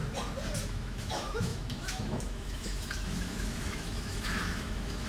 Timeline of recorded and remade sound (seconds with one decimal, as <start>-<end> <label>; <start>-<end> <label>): 0.0-0.6 recorded; 0.6-5.1 remade

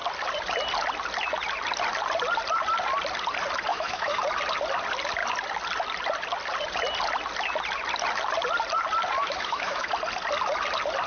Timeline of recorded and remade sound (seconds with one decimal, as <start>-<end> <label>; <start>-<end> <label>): 0.0-3.7 recorded; 3.7-4.2 remade; 4.2-9.2 recorded; 9.2-9.9 remade; 9.9-11.1 recorded

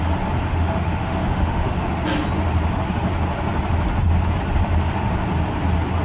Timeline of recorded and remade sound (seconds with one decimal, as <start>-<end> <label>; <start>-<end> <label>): 0.0-0.5 recorded; 0.5-1.9 remade; 1.9-6.0 recorded

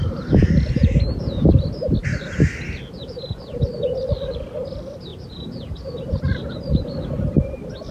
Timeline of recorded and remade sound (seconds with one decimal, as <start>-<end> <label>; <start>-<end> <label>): 0.0-7.9 recorded

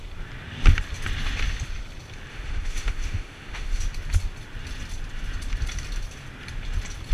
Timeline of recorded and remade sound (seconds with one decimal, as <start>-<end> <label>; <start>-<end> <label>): 0.0-2.3 recorded; 2.3-3.8 remade; 3.8-7.1 recorded

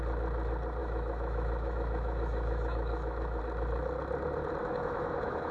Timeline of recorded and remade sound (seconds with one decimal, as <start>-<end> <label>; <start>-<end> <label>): 0.0-0.8 recorded; 0.8-3.4 remade; 3.4-4.6 recorded; 4.6-5.5 remade

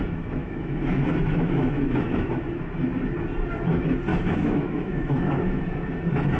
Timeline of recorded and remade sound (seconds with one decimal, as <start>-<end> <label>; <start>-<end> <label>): 0.0-0.4 recorded; 0.4-2.4 remade; 2.4-4.1 recorded; 4.1-5.6 remade; 5.6-6.4 recorded